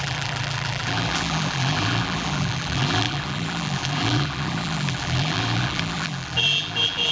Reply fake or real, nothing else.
fake